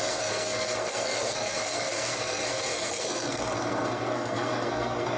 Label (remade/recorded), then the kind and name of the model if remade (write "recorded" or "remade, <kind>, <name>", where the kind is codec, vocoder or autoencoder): remade, codec, SNAC